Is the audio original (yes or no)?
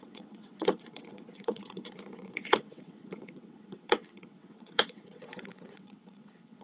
no